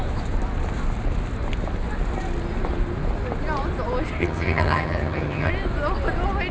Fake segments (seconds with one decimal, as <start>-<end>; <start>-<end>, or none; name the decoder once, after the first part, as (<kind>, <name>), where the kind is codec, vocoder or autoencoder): 4.2-5.5 (vocoder, HiFi-GAN)